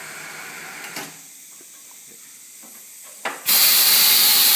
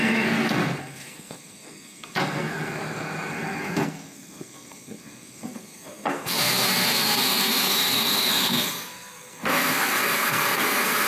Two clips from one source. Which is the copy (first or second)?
second